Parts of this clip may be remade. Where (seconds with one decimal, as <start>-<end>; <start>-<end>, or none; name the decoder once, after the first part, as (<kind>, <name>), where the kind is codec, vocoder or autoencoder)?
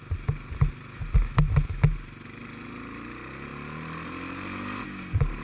none